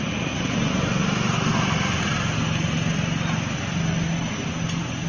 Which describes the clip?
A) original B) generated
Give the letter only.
A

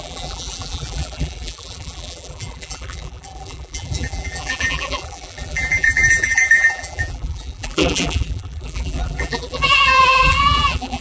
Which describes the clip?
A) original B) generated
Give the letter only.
B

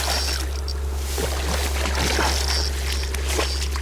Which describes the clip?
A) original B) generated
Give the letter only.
A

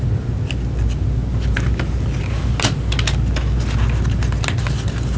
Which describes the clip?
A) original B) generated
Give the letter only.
A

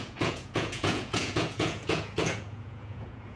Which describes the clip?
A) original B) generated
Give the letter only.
B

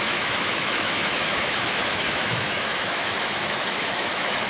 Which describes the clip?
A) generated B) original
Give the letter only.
A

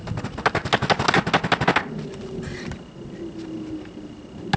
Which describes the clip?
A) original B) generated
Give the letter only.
A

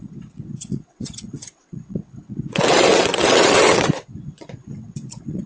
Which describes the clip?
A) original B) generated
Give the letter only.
B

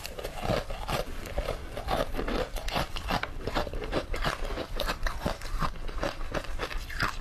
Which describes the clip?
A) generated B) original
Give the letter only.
B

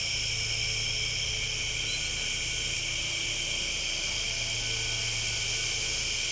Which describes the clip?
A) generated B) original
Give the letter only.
B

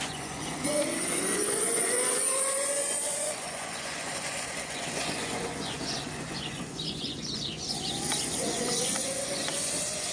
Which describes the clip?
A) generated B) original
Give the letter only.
A